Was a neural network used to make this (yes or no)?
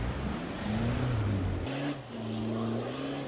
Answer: no